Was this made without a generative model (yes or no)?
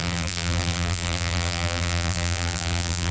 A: no